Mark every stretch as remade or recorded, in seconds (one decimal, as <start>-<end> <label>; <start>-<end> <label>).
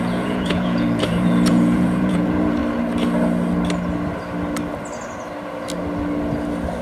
0.0-2.6 remade; 2.6-6.8 recorded